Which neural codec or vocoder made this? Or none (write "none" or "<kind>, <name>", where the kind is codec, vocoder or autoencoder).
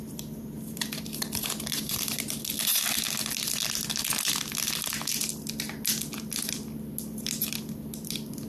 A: none